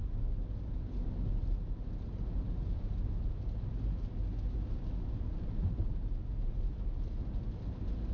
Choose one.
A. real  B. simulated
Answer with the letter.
A